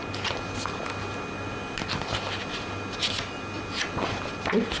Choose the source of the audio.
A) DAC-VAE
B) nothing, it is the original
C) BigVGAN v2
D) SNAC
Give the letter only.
B